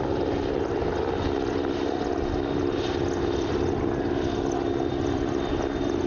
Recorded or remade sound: recorded